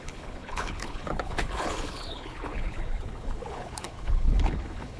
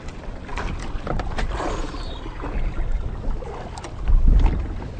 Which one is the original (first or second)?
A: second